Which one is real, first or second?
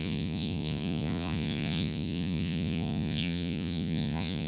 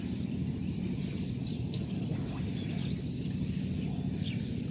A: second